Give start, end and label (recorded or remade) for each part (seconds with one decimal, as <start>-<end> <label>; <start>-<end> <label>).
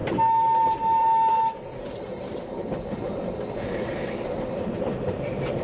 0.0-0.7 recorded; 0.7-5.6 remade